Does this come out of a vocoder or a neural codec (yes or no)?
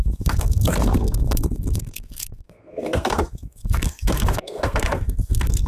yes